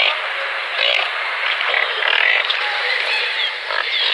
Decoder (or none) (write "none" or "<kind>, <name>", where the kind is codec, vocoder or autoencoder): vocoder, BigVGAN v2